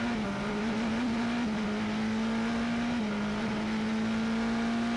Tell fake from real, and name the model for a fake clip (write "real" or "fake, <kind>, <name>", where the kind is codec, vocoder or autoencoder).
real